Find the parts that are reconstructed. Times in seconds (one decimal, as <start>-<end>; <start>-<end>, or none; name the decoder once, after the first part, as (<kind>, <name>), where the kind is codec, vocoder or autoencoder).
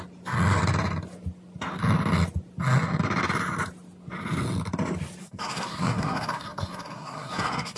5.2-7.8 (codec, SNAC)